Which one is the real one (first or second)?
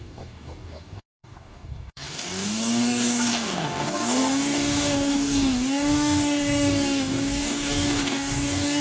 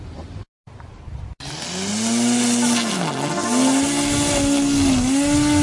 second